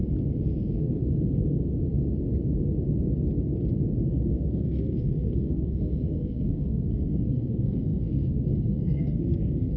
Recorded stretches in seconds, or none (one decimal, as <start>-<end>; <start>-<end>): 0.0-0.6; 1.0-4.1